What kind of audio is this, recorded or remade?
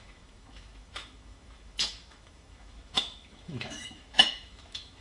remade